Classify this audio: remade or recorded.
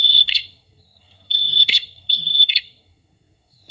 remade